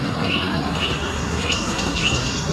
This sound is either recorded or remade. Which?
remade